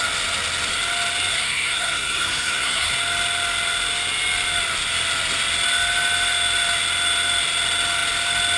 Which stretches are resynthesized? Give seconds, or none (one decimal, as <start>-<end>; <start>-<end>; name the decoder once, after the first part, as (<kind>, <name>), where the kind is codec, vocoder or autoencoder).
1.3-2.9 (codec, SNAC)